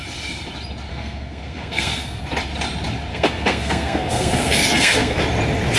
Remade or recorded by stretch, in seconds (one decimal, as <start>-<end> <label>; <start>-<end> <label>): 0.0-0.9 recorded; 0.9-2.2 remade; 2.2-3.1 recorded; 3.1-5.2 remade; 5.2-5.8 recorded